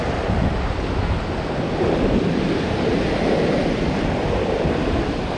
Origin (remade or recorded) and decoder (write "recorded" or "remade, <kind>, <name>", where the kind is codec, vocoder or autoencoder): recorded